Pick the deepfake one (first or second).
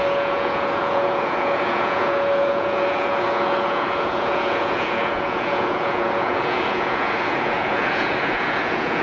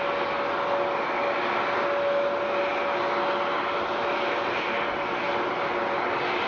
first